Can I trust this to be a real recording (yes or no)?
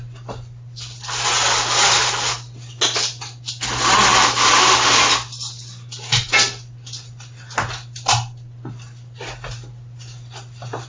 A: yes